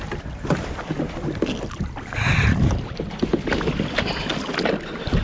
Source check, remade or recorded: recorded